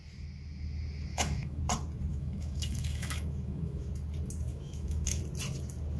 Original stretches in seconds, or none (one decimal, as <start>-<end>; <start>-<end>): 0.0-1.1; 1.6-2.1; 3.9-4.5; 5.2-6.0